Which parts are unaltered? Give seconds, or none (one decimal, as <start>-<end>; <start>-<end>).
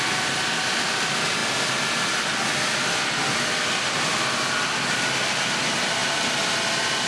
0.0-7.1